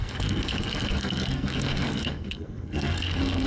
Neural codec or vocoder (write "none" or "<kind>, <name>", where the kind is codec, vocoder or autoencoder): codec, SNAC